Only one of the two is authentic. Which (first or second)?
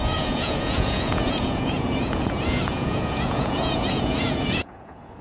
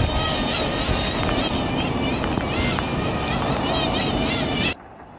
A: second